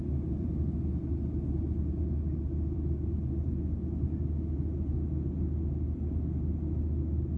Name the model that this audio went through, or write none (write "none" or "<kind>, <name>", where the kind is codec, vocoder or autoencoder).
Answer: none